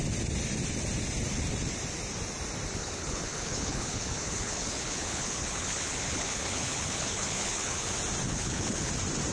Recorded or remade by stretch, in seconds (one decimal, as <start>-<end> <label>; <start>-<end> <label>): 0.0-2.8 recorded; 2.8-7.9 remade; 7.9-8.3 recorded; 8.3-8.9 remade; 8.9-9.3 recorded